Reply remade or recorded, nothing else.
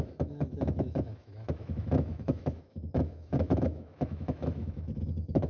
remade